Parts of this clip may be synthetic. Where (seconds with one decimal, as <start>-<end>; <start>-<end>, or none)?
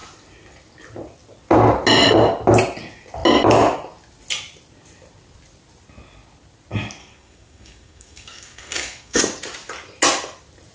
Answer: 7.0-9.2